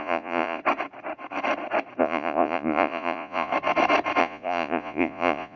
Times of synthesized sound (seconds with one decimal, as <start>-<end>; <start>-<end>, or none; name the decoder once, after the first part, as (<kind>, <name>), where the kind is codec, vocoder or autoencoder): 0.0-0.6 (vocoder, Vocos); 2.0-3.5; 4.2-5.6